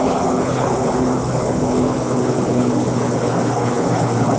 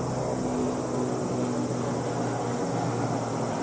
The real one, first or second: second